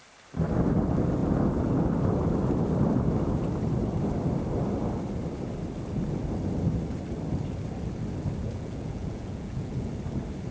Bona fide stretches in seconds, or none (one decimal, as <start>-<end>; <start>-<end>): 0.0-8.4; 9.9-10.5